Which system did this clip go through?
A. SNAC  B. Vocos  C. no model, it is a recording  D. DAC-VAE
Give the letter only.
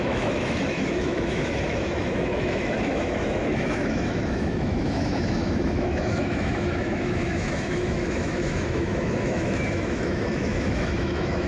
D